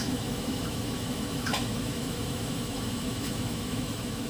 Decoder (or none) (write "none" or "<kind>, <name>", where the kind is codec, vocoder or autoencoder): autoencoder, DAC-VAE